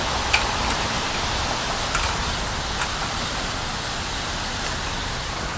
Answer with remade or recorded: recorded